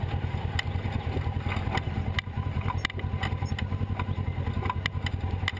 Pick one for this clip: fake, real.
real